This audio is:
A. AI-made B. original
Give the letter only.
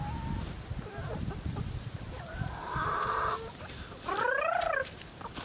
A